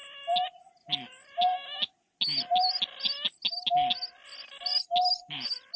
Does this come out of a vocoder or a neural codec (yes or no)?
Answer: no